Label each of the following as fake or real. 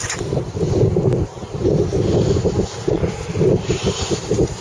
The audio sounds real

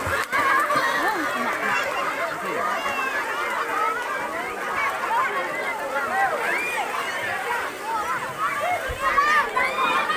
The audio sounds real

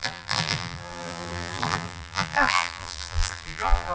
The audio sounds fake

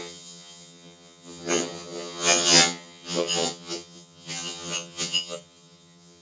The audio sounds fake